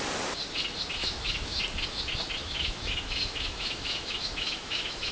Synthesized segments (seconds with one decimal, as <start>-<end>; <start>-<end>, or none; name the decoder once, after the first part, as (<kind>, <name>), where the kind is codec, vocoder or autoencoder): 1.0-1.6 (autoencoder, DAC-VAE); 2.4-5.1